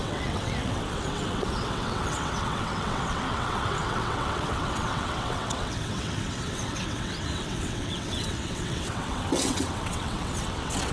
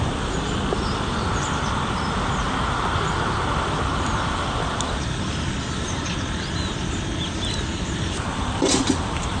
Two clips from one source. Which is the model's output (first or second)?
first